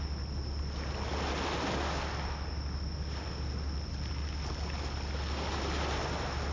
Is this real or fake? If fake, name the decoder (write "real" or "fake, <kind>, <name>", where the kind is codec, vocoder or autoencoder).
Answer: real